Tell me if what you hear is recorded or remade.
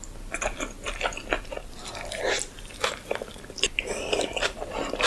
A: recorded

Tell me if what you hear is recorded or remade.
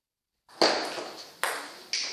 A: recorded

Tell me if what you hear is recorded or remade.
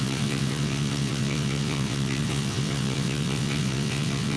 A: remade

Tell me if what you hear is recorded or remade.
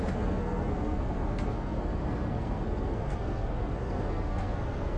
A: remade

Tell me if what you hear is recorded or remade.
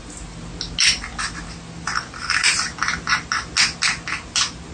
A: recorded